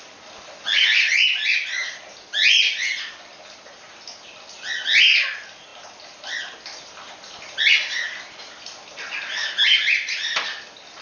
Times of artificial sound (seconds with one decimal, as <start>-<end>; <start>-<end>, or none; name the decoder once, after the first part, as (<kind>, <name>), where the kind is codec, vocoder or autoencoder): none